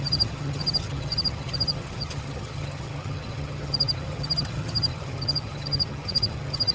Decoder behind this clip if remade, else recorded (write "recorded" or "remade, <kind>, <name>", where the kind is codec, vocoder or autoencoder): remade, vocoder, HiFi-GAN